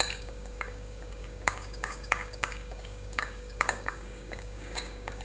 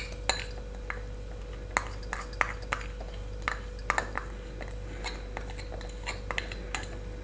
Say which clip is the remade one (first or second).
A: first